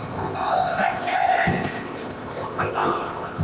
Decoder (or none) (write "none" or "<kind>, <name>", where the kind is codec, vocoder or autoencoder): codec, ZipCodec